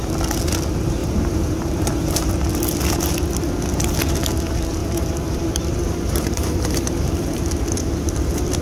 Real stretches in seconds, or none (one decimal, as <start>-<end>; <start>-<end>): 0.0-1.0; 2.3-4.8; 7.5-8.6